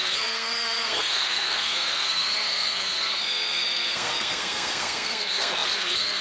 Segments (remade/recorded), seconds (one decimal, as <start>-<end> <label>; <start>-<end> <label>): 0.0-6.2 remade